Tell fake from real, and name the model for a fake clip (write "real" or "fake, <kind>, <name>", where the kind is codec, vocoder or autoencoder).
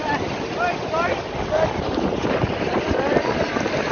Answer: real